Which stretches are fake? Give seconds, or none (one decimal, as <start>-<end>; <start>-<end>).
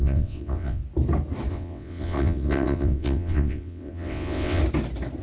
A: 0.0-0.8; 1.5-4.6